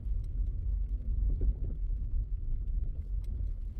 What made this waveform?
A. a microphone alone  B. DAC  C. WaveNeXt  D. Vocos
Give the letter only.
A